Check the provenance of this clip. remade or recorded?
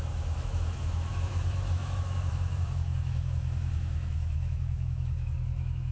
remade